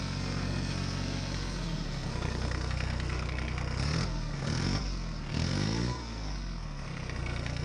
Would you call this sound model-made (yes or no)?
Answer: yes